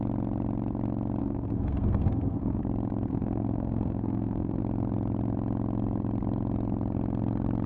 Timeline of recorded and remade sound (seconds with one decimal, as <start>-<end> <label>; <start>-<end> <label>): 0.0-1.2 recorded; 1.2-2.6 remade; 2.6-3.1 recorded; 3.1-4.6 remade; 4.6-7.7 recorded